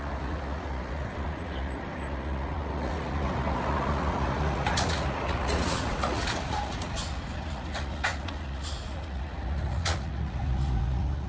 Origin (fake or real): fake